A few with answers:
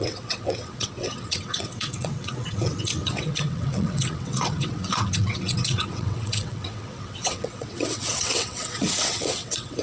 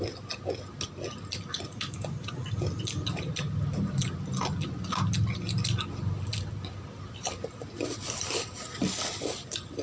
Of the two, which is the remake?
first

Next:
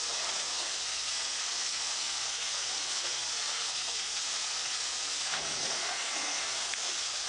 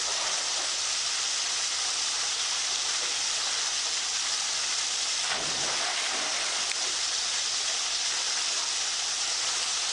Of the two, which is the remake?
first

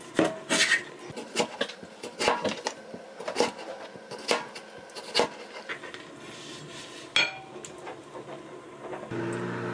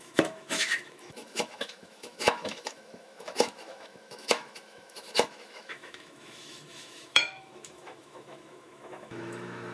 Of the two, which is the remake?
second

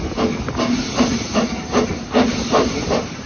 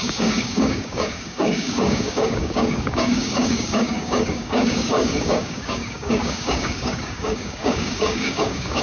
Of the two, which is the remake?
second